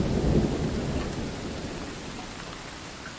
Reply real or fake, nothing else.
real